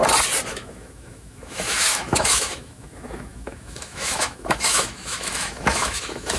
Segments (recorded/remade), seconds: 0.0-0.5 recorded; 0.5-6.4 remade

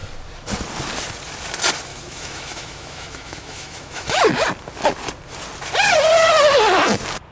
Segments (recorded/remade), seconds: 0.0-1.9 recorded; 1.9-4.2 remade; 4.2-7.3 recorded

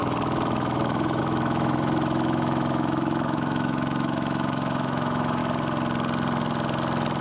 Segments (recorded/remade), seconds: 0.0-5.4 remade; 5.4-7.2 recorded

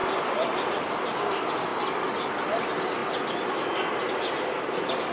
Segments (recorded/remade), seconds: 0.0-5.1 recorded

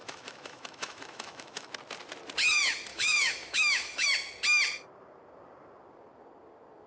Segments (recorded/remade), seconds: 0.0-1.7 remade; 1.7-2.9 recorded; 2.9-4.1 remade; 4.1-6.9 recorded

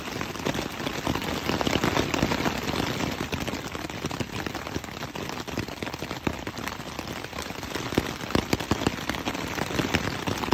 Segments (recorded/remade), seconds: 0.0-10.5 recorded

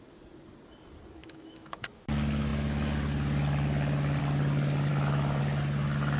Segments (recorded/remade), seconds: 0.0-1.2 recorded; 1.2-1.8 remade; 1.8-4.9 recorded; 4.9-5.4 remade; 5.4-6.2 recorded

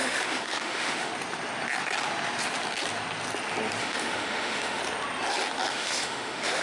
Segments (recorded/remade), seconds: 0.0-1.1 remade; 1.1-3.8 recorded; 3.8-4.8 remade; 4.8-5.7 recorded; 5.7-6.6 remade